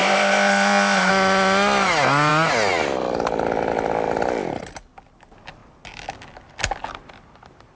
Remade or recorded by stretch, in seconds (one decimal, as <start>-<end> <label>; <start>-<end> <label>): 0.0-1.1 remade; 1.1-7.8 recorded